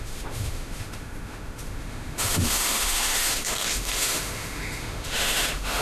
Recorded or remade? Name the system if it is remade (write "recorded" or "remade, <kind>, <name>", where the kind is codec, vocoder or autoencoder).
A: remade, autoencoder, DAC-VAE